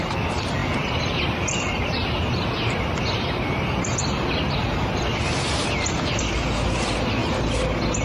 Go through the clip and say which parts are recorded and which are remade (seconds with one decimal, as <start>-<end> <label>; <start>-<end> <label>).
0.0-8.0 recorded